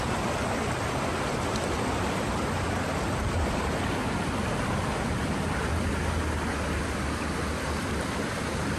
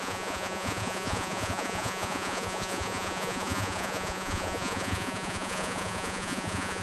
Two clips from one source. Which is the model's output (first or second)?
second